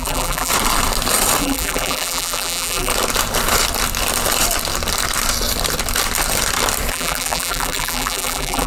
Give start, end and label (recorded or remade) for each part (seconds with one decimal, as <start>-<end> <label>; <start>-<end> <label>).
0.0-0.5 remade; 0.5-1.4 recorded; 1.4-2.9 remade; 2.9-6.9 recorded; 6.9-8.7 remade